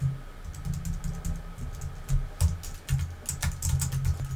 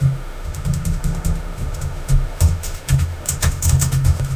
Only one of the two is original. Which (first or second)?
first